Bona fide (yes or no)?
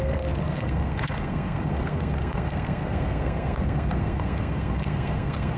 no